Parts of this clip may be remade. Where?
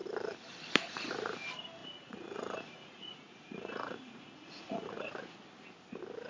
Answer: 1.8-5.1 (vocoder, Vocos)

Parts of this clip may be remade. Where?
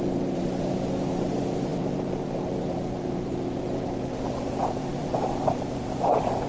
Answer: 0.0-6.5 (vocoder, Vocos)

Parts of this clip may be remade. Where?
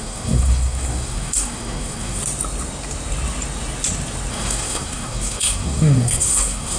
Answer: 0.0-2.2 (codec, SNAC); 4.3-6.8